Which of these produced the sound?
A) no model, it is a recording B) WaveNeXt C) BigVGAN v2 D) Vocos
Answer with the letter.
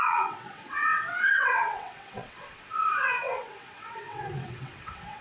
B